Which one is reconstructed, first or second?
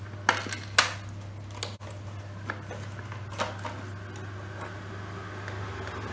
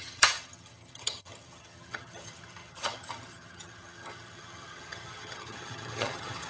second